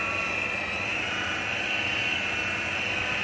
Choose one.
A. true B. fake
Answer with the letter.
A